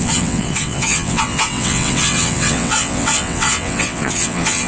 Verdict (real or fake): fake